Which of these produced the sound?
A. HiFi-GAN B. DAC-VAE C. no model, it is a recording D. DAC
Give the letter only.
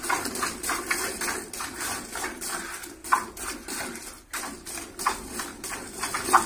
C